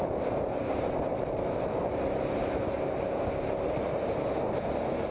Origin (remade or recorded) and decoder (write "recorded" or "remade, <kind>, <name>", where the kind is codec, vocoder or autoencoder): recorded